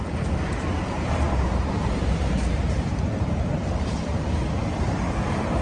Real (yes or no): no